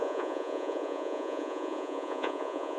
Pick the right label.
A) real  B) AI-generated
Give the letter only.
B